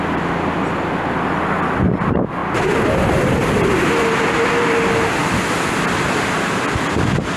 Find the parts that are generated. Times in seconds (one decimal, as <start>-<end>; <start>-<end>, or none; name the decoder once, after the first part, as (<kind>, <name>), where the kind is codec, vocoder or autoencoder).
none